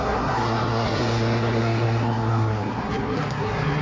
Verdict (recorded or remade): remade